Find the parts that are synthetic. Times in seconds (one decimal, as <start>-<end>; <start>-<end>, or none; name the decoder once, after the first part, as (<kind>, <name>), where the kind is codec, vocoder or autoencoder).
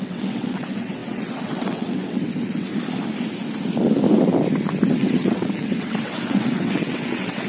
0.0-2.7 (vocoder, WaveNeXt); 4.9-7.5